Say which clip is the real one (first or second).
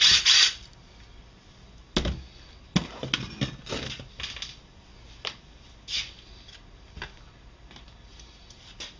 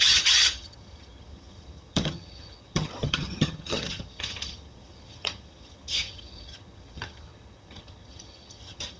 first